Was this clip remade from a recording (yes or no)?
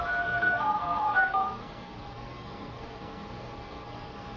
yes